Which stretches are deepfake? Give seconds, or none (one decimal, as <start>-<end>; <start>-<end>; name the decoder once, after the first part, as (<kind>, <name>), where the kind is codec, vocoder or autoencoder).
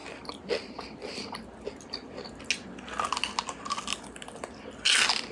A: none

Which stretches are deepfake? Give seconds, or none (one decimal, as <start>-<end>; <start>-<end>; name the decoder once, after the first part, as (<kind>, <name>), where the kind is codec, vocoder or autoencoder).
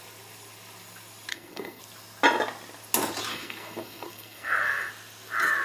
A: 1.3-1.8 (codec, SNAC); 3.3-4.9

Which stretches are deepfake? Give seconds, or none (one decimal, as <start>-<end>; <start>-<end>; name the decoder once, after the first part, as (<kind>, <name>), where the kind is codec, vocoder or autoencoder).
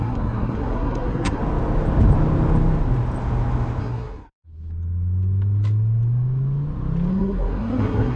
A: 0.0-1.4 (codec, SNAC); 3.8-4.5; 7.1-8.2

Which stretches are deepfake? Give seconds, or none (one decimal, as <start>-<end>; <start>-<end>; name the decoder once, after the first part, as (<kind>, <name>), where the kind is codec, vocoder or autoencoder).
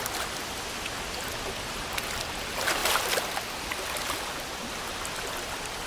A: none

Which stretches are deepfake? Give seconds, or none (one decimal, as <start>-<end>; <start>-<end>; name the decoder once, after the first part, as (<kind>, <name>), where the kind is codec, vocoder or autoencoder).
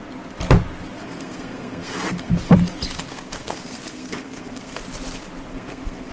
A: 1.0-2.3 (codec, SNAC); 3.1-4.8; 5.5-6.1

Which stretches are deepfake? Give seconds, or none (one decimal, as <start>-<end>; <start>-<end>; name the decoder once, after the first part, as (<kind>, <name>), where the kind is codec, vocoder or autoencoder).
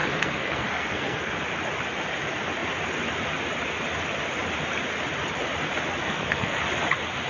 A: 0.0-1.3 (codec, SNAC); 6.0-6.6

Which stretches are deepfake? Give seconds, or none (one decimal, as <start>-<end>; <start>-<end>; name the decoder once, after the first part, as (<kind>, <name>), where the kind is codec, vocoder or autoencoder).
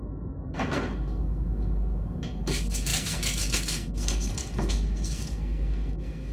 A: 0.0-6.3 (codec, SNAC)